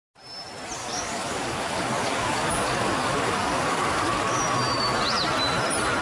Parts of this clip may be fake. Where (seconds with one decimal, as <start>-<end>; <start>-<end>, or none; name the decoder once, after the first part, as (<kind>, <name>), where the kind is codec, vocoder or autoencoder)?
0.8-4.4 (codec, DAC)